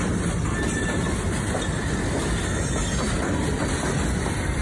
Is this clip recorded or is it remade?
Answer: recorded